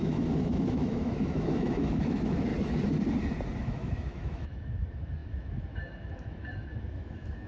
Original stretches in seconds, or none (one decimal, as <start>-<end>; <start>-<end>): 2.5-3.6